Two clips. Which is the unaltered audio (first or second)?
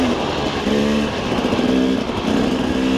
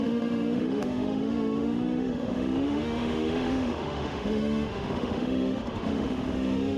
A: first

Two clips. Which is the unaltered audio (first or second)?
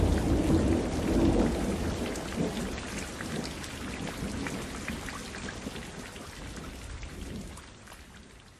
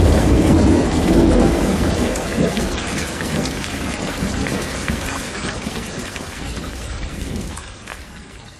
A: first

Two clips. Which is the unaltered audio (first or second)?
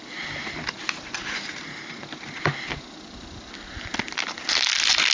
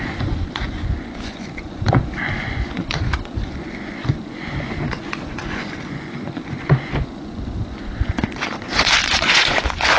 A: first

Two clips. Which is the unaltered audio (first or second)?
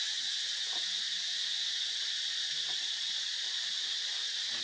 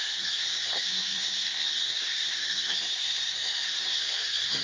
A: first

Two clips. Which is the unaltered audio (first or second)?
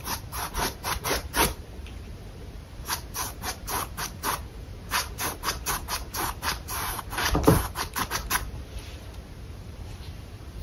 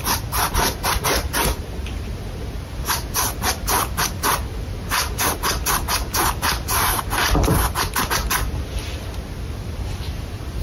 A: second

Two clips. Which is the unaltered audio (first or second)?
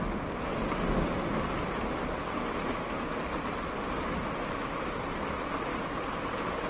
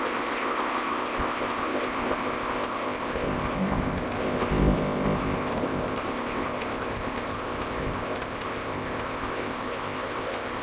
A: first